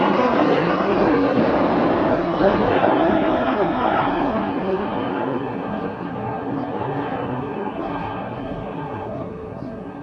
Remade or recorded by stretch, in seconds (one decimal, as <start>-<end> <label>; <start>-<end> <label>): 0.0-1.4 remade; 1.4-2.1 recorded; 2.1-10.0 remade